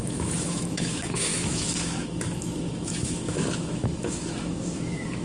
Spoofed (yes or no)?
yes